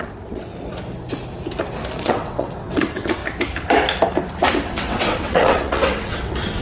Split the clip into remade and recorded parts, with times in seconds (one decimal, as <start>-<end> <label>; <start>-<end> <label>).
0.0-0.5 remade; 0.5-2.0 recorded; 2.0-3.2 remade; 3.2-4.5 recorded; 4.5-6.6 remade